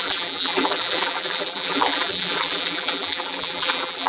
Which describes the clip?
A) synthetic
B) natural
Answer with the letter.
A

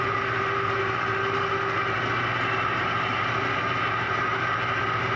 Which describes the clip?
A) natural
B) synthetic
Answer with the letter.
A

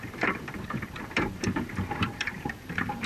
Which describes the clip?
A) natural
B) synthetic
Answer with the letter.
B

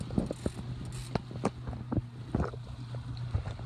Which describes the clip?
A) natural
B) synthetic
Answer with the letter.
A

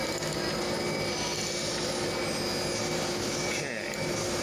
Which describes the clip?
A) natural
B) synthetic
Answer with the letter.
A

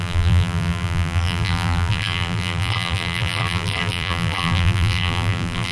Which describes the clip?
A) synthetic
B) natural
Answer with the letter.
A